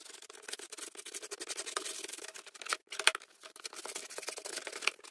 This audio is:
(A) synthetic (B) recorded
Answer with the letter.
B